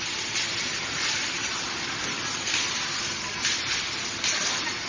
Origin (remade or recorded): recorded